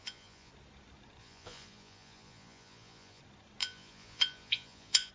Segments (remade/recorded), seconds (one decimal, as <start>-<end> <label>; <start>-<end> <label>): 0.0-0.5 remade; 0.5-1.2 recorded; 1.2-3.2 remade; 3.2-3.6 recorded; 3.6-5.1 remade